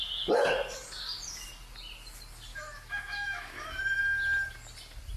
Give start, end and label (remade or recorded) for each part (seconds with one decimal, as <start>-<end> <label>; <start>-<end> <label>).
0.0-2.5 recorded; 2.5-3.8 remade; 3.8-5.2 recorded